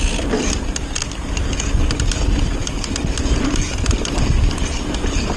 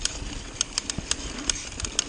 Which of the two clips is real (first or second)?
first